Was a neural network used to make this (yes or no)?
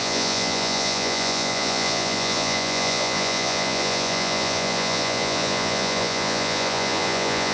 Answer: yes